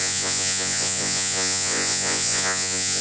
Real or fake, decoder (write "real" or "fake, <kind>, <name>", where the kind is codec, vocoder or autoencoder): fake, vocoder, Vocos